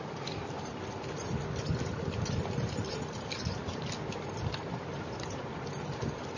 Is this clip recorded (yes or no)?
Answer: yes